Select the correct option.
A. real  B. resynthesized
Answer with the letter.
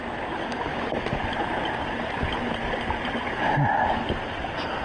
A